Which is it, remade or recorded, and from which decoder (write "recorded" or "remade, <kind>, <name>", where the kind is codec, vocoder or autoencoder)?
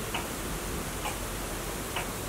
recorded